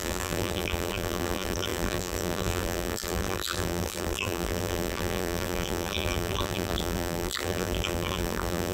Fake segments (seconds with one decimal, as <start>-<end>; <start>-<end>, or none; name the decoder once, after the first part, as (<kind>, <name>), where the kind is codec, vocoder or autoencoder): 0.0-8.7 (vocoder, BigVGAN v2)